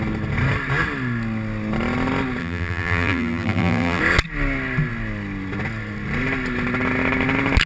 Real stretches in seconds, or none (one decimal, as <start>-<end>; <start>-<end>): 0.0-2.4; 4.0-7.7